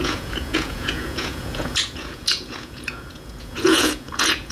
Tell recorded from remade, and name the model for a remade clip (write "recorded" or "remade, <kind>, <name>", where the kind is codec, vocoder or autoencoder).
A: remade, vocoder, Vocos